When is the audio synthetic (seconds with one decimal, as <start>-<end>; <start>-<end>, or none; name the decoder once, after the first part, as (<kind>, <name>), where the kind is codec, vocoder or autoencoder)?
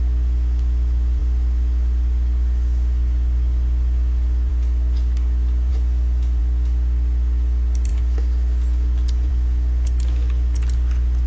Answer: none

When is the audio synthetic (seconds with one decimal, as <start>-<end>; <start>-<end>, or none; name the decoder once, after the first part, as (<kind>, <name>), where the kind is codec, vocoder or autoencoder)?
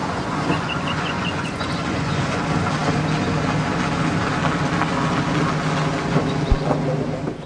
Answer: 0.0-2.4 (vocoder, Vocos)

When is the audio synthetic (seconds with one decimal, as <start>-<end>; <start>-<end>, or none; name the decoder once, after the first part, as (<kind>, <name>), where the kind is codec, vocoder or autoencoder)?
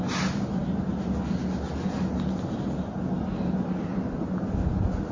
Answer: none